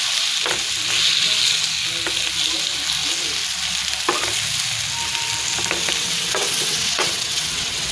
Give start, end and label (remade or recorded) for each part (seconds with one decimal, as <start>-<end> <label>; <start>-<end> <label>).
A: 0.0-6.0 recorded; 6.0-7.9 remade